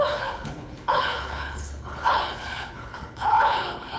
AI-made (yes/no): yes